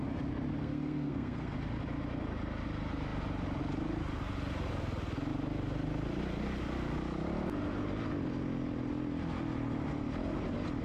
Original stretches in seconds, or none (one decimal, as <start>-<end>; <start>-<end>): 0.0-0.6; 1.5-10.8